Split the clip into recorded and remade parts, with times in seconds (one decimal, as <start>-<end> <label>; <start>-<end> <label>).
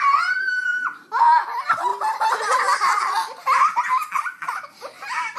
0.0-1.9 recorded; 1.9-3.8 remade; 3.8-5.4 recorded